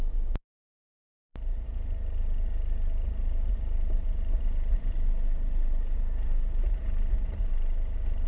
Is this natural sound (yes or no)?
no